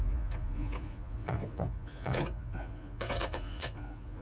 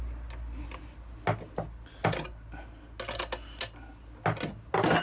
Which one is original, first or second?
second